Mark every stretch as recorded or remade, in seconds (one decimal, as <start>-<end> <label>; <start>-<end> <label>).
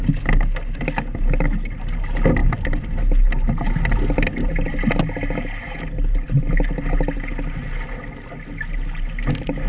0.0-9.7 recorded